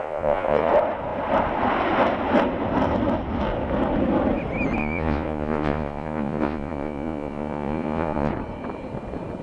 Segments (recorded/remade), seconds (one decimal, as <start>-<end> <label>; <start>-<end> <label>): 0.0-0.7 remade; 0.7-4.8 recorded; 4.8-8.3 remade; 8.3-9.4 recorded